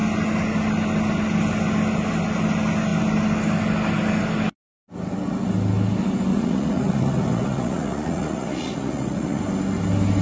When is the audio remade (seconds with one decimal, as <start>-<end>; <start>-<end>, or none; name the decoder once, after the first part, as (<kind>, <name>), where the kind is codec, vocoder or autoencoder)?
6.3-9.4 (vocoder, Vocos)